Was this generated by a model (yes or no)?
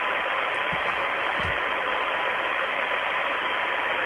no